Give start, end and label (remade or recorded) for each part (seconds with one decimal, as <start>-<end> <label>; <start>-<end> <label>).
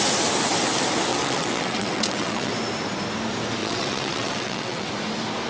0.0-1.1 recorded; 1.1-2.5 remade; 2.5-3.6 recorded; 3.6-4.9 remade; 4.9-5.5 recorded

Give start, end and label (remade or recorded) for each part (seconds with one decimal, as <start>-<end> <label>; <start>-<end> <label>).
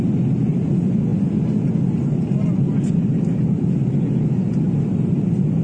0.0-5.6 recorded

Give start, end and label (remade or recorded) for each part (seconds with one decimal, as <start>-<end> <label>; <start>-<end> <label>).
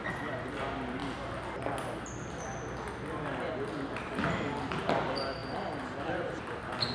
0.0-6.9 recorded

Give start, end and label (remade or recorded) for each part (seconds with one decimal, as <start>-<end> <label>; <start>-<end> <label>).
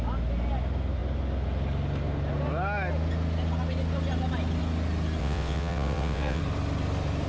0.0-5.2 recorded; 5.2-6.4 remade; 6.4-7.3 recorded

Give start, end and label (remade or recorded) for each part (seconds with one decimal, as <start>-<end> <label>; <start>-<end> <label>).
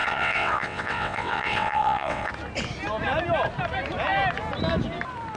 0.0-2.3 remade; 2.3-5.4 recorded